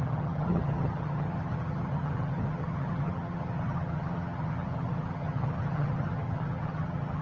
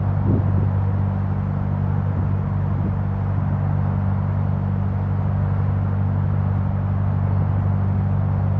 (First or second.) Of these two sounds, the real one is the second